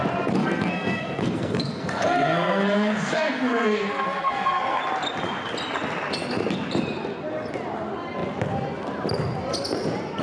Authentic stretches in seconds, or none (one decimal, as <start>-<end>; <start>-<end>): 0.0-0.4; 4.8-10.2